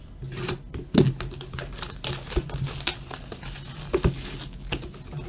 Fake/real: real